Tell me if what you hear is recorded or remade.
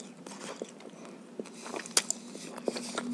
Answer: recorded